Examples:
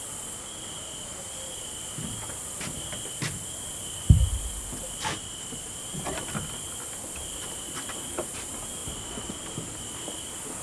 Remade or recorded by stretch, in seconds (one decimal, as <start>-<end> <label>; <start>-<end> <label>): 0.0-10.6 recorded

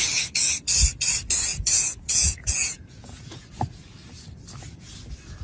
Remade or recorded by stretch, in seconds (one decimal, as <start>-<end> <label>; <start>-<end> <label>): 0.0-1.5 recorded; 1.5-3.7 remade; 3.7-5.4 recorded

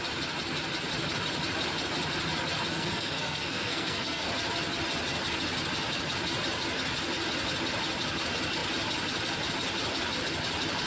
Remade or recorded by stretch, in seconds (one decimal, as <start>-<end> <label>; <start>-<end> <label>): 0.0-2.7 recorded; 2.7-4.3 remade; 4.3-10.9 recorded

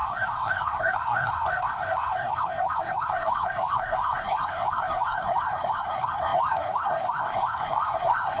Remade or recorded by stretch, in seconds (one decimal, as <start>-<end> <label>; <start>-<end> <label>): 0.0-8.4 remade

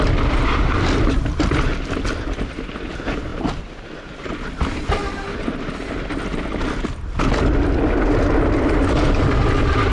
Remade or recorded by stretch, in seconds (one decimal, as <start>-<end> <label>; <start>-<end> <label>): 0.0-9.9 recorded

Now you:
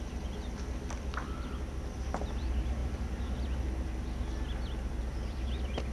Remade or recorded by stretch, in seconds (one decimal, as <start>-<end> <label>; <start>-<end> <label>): 0.0-5.9 recorded

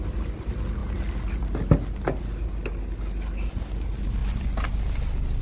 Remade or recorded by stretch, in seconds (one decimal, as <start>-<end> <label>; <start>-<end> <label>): 0.0-5.4 recorded